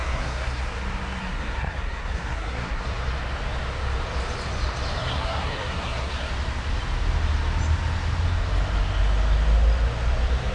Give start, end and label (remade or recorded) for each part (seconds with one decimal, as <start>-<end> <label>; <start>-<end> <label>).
0.0-0.6 remade; 0.6-1.2 recorded; 1.2-2.8 remade; 2.8-5.0 recorded; 5.0-6.3 remade; 6.3-10.5 recorded